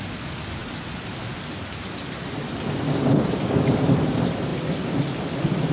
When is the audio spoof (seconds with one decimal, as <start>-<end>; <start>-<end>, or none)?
none